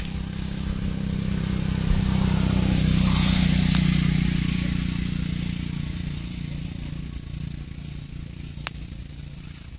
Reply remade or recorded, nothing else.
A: recorded